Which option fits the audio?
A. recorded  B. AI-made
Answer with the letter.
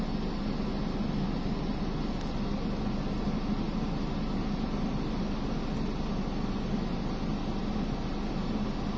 A